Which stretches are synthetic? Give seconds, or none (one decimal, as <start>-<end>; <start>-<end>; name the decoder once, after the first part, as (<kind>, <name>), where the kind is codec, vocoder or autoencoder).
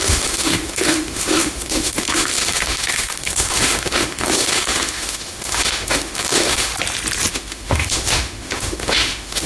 0.0-6.7 (autoencoder, DAC-VAE); 7.3-9.5